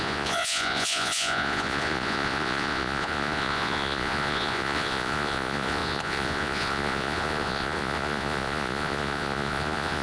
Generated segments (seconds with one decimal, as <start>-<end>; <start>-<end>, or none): 0.0-10.0